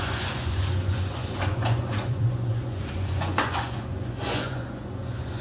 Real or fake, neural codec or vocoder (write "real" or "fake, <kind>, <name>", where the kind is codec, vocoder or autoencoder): fake, vocoder, Vocos